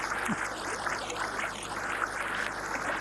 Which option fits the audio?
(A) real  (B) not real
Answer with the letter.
A